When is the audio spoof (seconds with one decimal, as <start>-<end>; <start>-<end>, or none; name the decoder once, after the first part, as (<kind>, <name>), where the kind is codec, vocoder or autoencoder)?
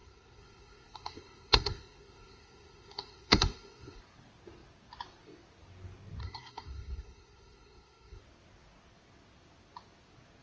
0.0-4.0 (codec, SNAC); 6.2-8.2